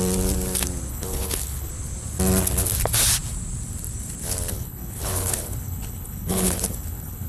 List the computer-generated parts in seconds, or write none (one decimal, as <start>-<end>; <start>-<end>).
0.9-1.7; 4.5-7.3